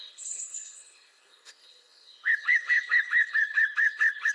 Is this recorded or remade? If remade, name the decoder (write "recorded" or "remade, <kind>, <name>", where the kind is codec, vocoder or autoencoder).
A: remade, codec, HILCodec